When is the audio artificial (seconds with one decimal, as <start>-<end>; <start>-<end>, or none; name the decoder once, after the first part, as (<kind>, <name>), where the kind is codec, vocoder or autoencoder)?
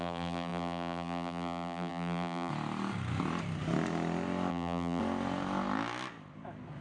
0.0-2.5 (vocoder, BigVGAN v2); 4.5-5.0